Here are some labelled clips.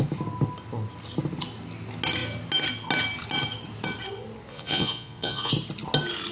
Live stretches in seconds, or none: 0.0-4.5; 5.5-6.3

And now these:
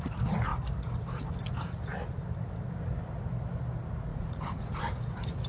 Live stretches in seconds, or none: 0.0-4.1; 4.8-5.5

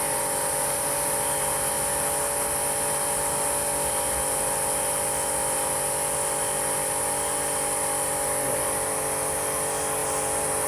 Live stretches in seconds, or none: 0.0-10.7

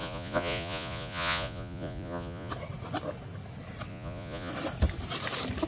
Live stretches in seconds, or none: 2.5-3.9; 4.5-5.7

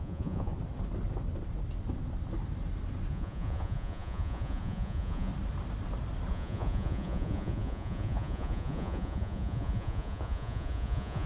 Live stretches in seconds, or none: 0.5-3.1; 5.3-6.3

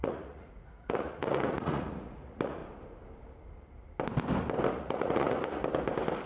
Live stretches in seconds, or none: 2.6-4.7; 5.6-6.3

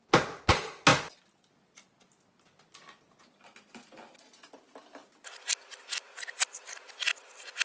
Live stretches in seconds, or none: 0.0-7.6